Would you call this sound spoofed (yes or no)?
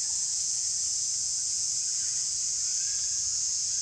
yes